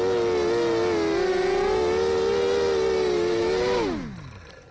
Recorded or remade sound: recorded